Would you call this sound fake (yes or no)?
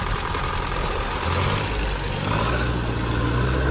no